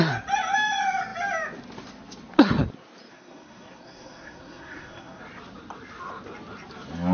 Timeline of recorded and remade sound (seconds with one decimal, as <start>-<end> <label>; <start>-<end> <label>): 0.0-3.1 recorded; 3.1-5.2 remade; 5.2-7.1 recorded